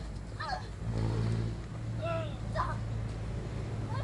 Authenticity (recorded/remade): recorded